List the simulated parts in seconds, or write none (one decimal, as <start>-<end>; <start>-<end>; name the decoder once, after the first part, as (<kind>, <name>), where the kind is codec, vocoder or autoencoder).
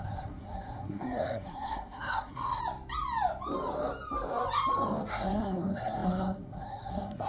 0.0-2.6 (codec, SNAC); 5.1-7.3